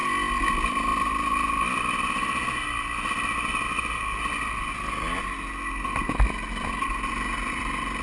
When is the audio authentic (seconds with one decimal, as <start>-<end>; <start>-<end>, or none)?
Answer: 0.0-8.0